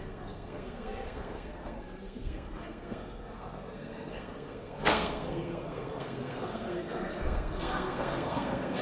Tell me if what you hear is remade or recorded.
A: remade